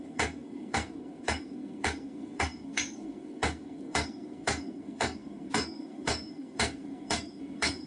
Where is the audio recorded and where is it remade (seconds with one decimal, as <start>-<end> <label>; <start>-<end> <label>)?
0.0-7.9 remade